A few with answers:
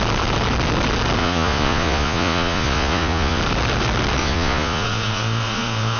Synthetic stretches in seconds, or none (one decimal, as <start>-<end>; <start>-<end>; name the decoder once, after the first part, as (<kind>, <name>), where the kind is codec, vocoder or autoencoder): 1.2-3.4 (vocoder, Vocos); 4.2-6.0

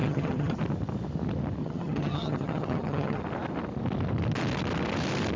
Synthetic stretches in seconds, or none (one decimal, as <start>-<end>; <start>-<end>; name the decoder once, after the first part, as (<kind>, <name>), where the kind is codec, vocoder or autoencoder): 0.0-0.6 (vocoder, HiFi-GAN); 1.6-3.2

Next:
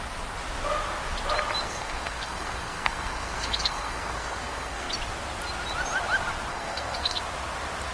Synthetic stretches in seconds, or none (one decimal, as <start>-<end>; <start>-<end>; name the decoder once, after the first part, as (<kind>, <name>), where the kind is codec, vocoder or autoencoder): 1.6-4.9 (codec, SNAC); 6.5-7.2